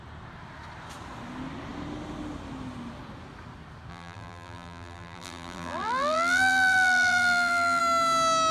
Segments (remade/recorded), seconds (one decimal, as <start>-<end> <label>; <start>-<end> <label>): 0.0-3.9 recorded; 3.9-7.8 remade; 7.8-8.5 recorded